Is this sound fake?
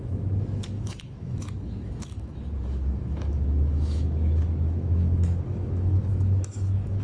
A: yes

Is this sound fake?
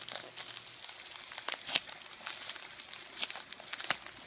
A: no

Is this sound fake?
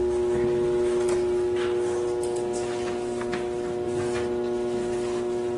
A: no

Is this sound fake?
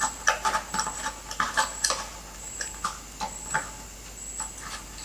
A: no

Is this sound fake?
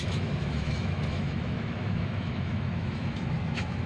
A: yes